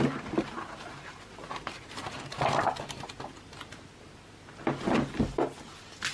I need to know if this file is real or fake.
real